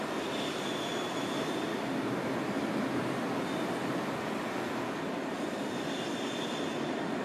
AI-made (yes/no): no